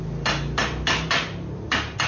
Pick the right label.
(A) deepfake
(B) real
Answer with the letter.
B